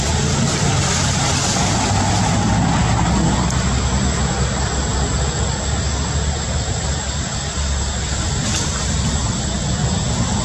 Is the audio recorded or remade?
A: recorded